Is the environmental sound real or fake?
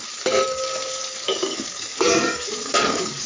fake